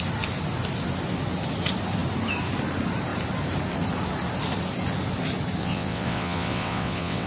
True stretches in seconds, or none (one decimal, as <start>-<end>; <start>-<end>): 0.0-5.6